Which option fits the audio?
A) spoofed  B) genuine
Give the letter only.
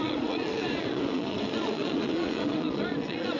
A